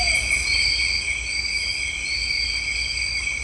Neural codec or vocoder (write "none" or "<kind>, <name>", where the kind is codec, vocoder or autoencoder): none